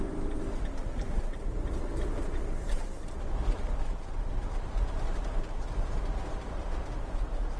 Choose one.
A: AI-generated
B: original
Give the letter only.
A